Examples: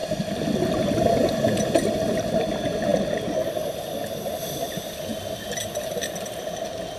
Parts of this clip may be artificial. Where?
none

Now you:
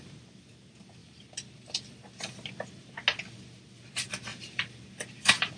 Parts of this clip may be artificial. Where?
1.0-2.2 (vocoder, BigVGAN v2); 4.3-4.8

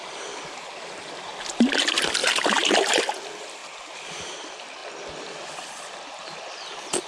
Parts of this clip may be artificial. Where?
2.2-3.0 (vocoder, BigVGAN v2); 3.6-4.3

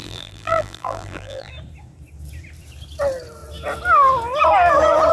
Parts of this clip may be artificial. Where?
0.0-1.5 (vocoder, BigVGAN v2)